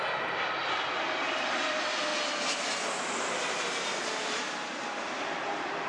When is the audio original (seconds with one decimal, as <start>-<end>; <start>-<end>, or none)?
2.1-5.2